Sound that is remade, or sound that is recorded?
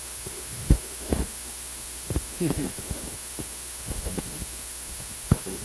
remade